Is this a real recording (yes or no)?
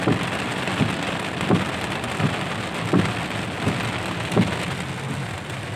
yes